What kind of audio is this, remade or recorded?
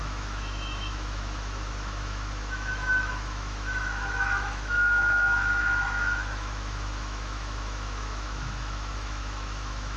remade